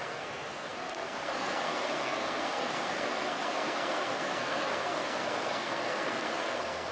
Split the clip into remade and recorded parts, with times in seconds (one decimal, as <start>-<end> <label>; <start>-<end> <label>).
0.0-6.9 remade